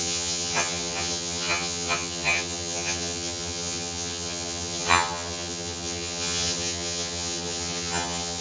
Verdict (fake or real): fake